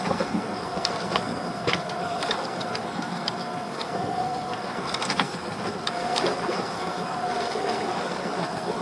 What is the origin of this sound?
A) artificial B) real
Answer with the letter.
A